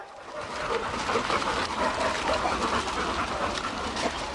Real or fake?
real